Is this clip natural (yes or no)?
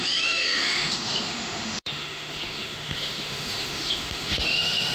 no